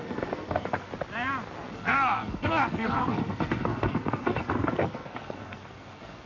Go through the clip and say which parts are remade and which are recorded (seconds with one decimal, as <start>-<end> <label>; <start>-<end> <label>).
0.0-0.9 remade; 0.9-1.7 recorded; 1.7-6.3 remade